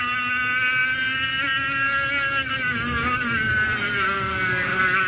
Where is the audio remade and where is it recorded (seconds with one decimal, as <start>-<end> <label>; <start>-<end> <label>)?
0.0-5.1 recorded